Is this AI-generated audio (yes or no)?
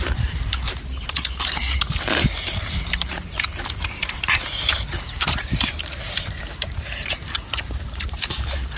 yes